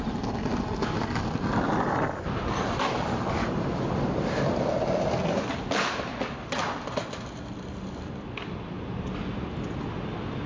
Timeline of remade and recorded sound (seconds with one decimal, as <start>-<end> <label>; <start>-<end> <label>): 0.0-10.5 recorded